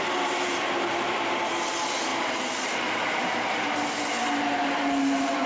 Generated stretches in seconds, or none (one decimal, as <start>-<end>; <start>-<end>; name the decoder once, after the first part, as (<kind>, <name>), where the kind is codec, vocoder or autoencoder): 2.1-3.7 (vocoder, BigVGAN v2)